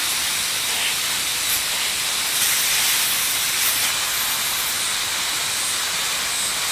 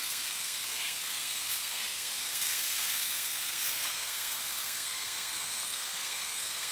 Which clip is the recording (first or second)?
first